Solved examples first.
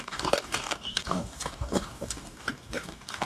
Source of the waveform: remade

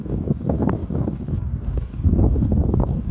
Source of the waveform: remade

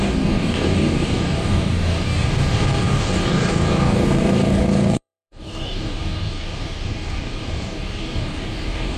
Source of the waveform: remade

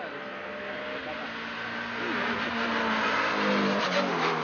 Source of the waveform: recorded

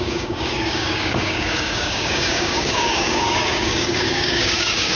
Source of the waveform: remade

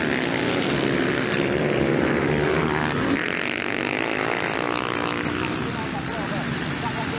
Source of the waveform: recorded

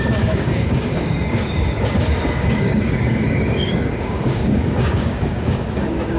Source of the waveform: remade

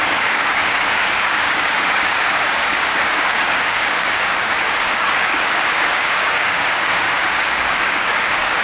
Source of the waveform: remade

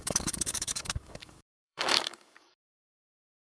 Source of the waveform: remade